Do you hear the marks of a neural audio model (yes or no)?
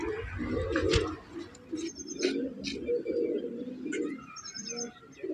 no